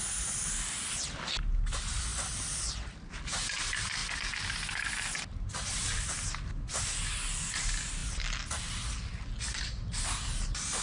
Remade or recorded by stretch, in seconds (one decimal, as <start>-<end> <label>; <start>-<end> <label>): 0.0-10.8 recorded